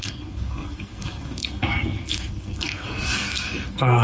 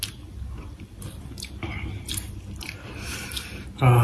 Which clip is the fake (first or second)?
first